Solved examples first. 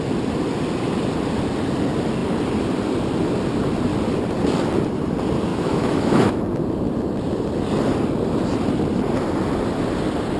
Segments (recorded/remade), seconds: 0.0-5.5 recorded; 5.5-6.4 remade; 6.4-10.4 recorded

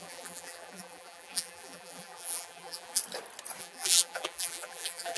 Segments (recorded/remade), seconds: 0.0-3.0 remade; 3.0-3.6 recorded; 3.6-5.2 remade

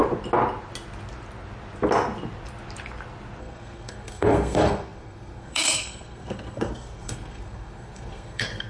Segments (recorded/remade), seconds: 0.0-3.4 recorded; 3.4-8.7 remade

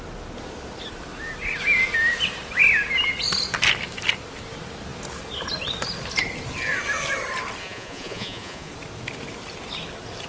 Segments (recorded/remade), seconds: 0.0-7.6 recorded; 7.6-8.7 remade; 8.7-10.3 recorded

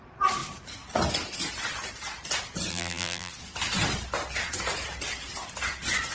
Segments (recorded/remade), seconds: 0.0-2.7 recorded; 2.7-3.3 remade; 3.3-6.1 recorded